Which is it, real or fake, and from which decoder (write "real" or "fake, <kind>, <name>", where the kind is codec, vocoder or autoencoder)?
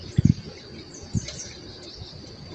real